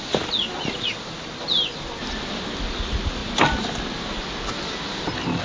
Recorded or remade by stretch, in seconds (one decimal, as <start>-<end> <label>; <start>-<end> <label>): 0.0-5.4 recorded